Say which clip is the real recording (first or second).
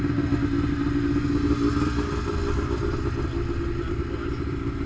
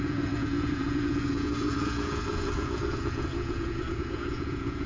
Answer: first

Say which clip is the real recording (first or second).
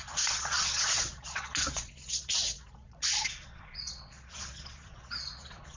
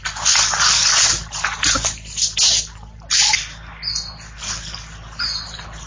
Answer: second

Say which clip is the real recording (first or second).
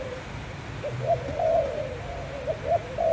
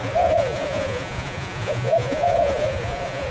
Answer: first